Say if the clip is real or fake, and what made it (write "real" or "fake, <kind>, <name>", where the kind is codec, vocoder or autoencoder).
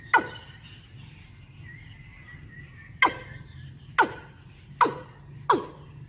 real